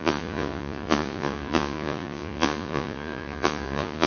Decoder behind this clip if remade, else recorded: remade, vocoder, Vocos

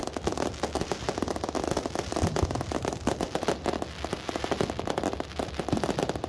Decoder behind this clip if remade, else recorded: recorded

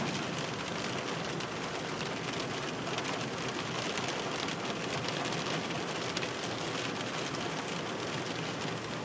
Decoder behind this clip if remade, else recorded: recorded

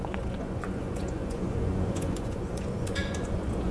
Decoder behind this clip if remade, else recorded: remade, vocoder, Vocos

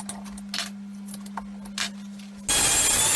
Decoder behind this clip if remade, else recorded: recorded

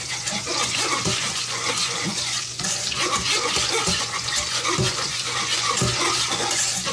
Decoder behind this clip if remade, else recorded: remade, vocoder, Vocos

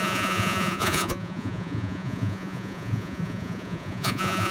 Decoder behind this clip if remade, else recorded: remade, vocoder, Vocos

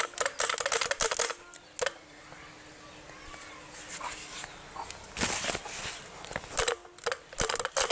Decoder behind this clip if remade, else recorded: recorded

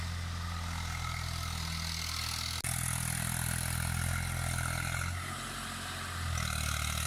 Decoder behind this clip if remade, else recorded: recorded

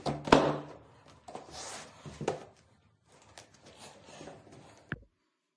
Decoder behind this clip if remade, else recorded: recorded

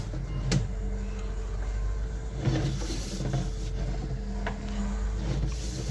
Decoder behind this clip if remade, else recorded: recorded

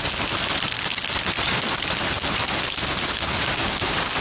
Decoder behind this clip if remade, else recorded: recorded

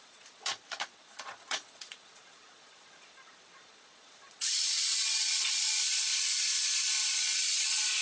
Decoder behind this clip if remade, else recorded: remade, vocoder, Vocos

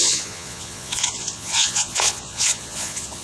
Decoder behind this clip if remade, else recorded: remade, vocoder, Vocos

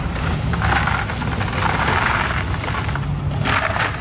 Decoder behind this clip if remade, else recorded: recorded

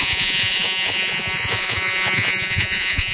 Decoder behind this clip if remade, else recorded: remade, vocoder, Vocos